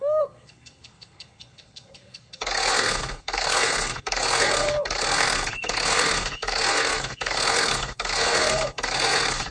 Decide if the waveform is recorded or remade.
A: remade